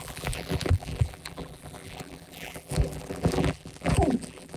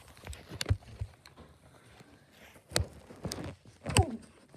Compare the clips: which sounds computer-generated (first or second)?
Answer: first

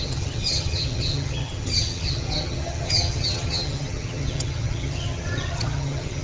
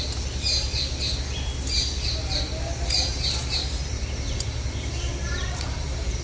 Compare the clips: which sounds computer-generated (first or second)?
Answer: first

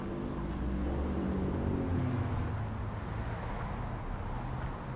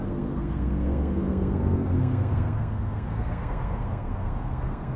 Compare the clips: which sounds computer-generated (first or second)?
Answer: second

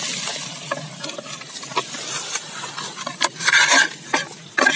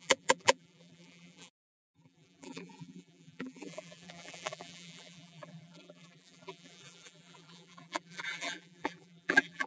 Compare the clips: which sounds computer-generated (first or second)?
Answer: second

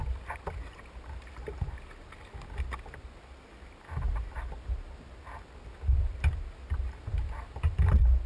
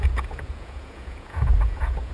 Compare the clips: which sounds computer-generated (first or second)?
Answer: second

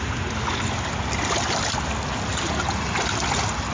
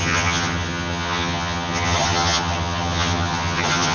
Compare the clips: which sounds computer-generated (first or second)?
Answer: second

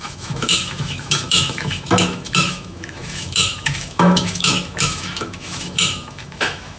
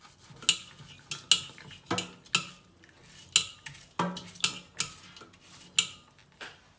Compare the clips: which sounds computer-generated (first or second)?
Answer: first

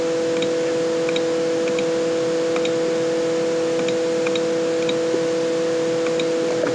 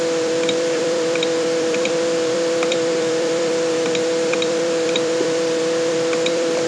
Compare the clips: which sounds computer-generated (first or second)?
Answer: second